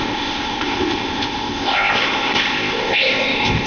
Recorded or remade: remade